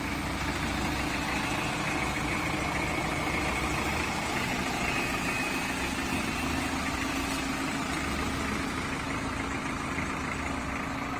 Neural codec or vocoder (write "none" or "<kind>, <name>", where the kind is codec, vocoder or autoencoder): none